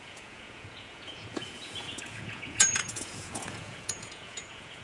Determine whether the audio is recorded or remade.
remade